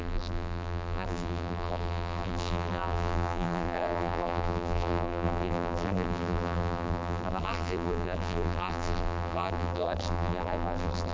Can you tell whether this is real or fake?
fake